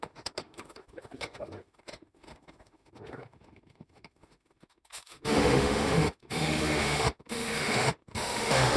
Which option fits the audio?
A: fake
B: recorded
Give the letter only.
A